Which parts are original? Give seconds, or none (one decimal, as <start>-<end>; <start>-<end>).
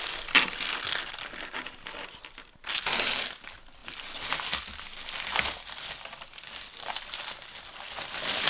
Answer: 0.0-8.5